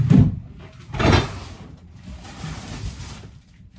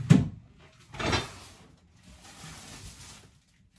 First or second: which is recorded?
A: second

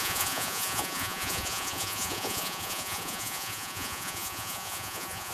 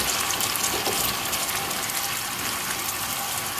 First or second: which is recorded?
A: second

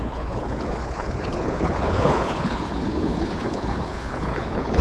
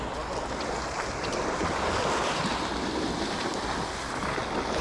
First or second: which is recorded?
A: second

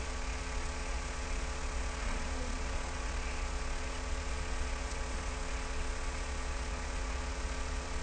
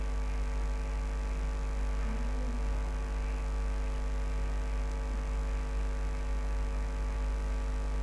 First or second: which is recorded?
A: second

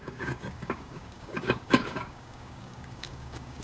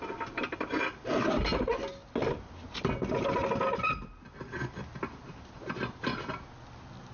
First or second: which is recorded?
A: second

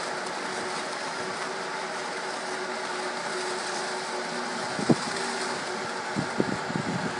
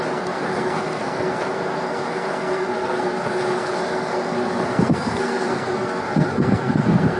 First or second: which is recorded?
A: first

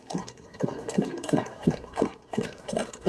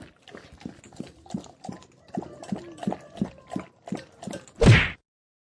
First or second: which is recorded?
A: second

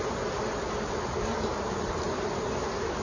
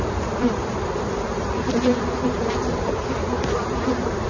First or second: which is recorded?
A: first